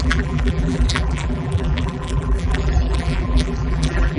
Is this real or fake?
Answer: fake